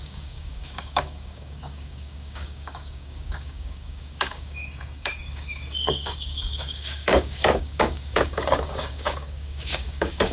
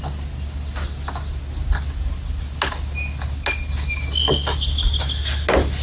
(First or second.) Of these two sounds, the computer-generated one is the first